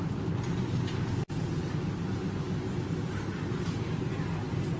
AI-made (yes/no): no